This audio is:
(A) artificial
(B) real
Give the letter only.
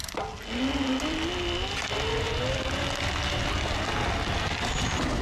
B